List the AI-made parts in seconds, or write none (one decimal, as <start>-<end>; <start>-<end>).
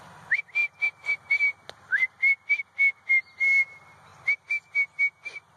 0.6-1.4